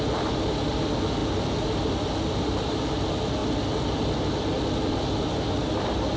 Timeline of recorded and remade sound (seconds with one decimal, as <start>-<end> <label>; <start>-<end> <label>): 0.0-6.2 recorded